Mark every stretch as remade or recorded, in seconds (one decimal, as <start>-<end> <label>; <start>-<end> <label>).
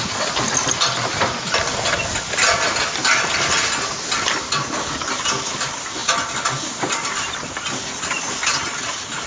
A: 0.0-9.3 recorded